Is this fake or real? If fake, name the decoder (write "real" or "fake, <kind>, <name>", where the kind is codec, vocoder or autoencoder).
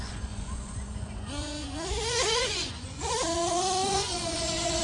fake, vocoder, Vocos